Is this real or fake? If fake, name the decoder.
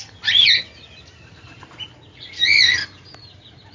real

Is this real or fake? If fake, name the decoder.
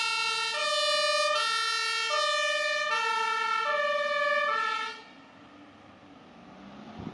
real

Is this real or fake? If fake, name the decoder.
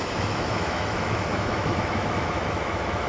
fake, autoencoder, DAC-VAE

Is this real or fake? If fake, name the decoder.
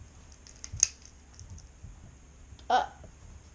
real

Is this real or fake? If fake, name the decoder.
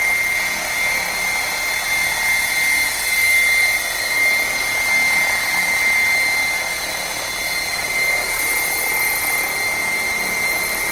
real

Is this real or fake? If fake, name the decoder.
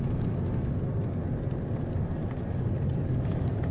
real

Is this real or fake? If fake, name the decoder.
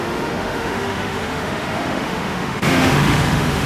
fake, autoencoder, DAC-VAE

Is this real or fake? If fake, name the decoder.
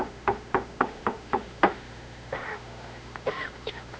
fake, autoencoder, DAC-VAE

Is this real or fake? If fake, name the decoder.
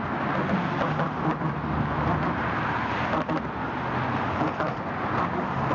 real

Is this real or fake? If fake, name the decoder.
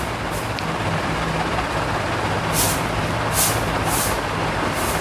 real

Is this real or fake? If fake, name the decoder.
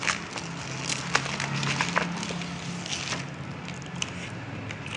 real